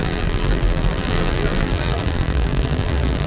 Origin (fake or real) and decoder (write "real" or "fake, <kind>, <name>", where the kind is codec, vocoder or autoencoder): fake, vocoder, BigVGAN v2